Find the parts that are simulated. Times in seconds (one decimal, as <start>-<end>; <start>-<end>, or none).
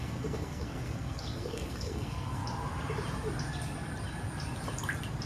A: 0.0-2.4